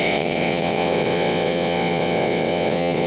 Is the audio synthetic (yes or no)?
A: yes